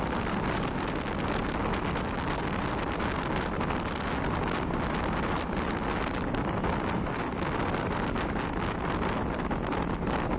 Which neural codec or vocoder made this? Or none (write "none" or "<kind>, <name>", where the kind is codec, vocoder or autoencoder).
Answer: none